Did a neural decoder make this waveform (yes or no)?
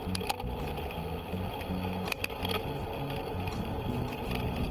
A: no